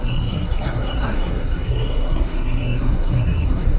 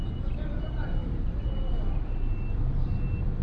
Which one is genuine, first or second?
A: second